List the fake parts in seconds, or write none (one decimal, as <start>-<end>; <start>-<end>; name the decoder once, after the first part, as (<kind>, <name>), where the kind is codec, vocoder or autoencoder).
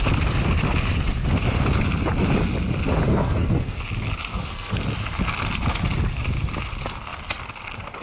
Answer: 3.1-3.8 (codec, SNAC); 4.3-4.8